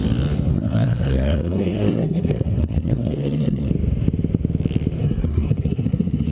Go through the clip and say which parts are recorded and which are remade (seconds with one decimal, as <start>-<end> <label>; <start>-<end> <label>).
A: 0.0-0.5 recorded; 0.5-3.7 remade; 3.7-5.0 recorded; 5.0-6.3 remade